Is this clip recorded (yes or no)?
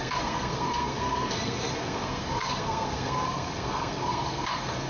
no